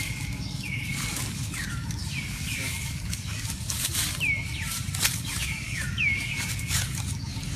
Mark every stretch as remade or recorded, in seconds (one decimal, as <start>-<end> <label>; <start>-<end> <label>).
0.0-4.0 remade; 4.0-5.1 recorded; 5.1-7.6 remade